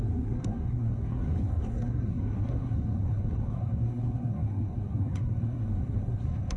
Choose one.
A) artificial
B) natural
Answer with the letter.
A